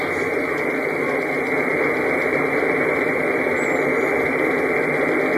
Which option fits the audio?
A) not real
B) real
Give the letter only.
B